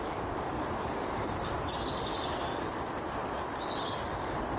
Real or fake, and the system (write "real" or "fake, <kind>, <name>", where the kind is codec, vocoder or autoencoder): real